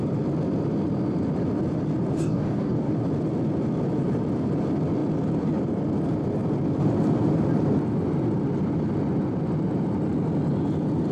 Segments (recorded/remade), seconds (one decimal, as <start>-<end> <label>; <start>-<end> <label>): 0.0-2.2 recorded; 2.2-2.9 remade; 2.9-11.1 recorded